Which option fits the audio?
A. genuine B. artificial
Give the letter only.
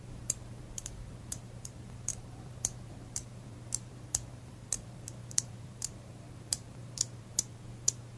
B